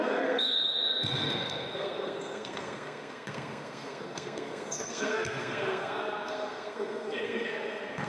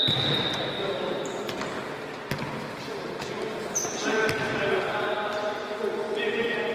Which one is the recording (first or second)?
second